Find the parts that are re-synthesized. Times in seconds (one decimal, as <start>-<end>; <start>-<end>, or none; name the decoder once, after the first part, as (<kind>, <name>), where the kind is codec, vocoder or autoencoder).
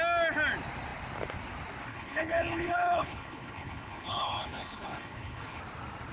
1.9-5.6 (codec, HILCodec)